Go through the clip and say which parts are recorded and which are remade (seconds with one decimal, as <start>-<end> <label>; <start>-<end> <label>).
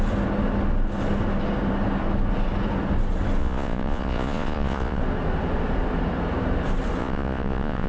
0.0-3.4 recorded; 3.4-5.0 remade; 5.0-7.0 recorded; 7.0-7.9 remade